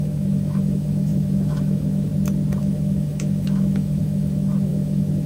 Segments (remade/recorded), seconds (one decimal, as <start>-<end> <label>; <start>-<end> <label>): 0.0-2.1 remade; 2.1-2.6 recorded; 2.6-5.3 remade